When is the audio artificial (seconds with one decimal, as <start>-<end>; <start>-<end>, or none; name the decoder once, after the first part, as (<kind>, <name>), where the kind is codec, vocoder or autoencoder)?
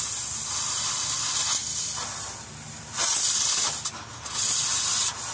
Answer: 1.6-3.5 (vocoder, BigVGAN v2)